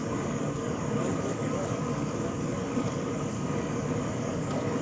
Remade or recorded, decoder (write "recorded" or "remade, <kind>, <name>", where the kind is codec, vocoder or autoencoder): remade, codec, DAC